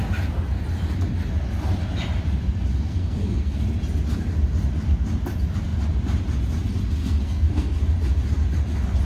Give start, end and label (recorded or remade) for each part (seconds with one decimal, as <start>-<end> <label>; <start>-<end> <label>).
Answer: 0.0-2.7 recorded; 2.7-3.6 remade; 3.6-7.0 recorded; 7.0-7.8 remade; 7.8-9.0 recorded